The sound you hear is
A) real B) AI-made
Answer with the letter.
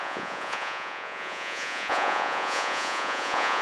B